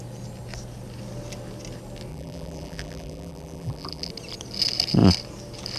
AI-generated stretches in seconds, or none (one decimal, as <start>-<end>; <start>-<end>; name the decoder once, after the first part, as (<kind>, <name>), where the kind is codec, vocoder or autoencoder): 2.1-4.1 (vocoder, BigVGAN v2)